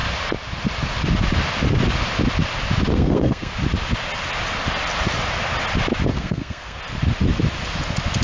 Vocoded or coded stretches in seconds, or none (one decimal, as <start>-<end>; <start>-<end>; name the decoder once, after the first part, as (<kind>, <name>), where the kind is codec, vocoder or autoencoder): 2.9-3.5 (codec, SNAC); 6.1-6.8